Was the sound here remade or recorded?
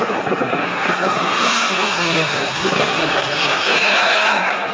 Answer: remade